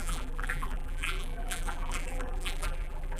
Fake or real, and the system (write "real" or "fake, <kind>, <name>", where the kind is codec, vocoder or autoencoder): fake, vocoder, BigVGAN v2